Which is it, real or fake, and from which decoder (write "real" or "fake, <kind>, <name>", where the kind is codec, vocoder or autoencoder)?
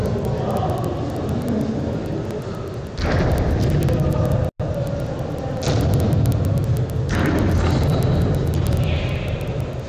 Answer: real